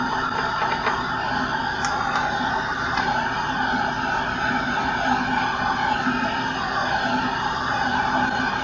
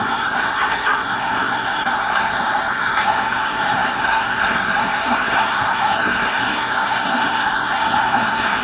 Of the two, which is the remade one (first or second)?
second